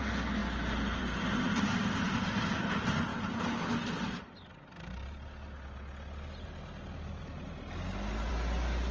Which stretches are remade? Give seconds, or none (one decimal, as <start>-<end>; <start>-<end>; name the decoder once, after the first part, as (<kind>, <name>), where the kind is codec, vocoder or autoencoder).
none